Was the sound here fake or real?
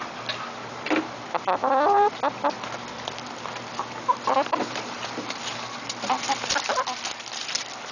fake